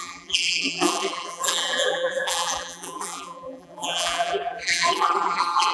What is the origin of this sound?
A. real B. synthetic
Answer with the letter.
B